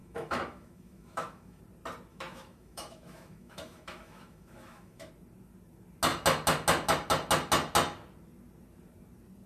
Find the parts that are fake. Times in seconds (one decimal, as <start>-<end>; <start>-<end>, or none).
0.0-1.6; 2.1-5.1